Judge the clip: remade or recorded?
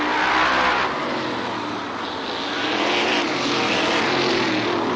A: recorded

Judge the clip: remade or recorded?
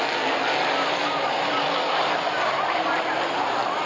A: recorded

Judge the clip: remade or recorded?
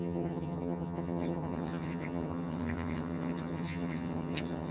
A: remade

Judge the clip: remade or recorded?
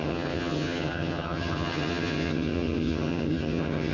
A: remade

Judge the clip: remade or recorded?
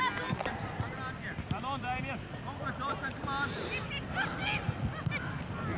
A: recorded